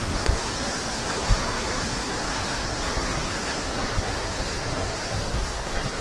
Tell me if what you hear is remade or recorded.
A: remade